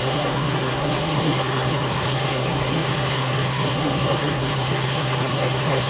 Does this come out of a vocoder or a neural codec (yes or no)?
yes